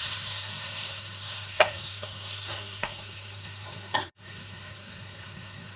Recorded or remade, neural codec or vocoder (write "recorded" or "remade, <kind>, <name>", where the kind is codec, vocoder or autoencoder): remade, codec, SNAC